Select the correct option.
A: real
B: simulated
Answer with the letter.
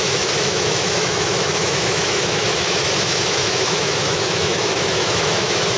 B